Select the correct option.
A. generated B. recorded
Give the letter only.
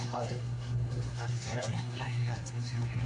A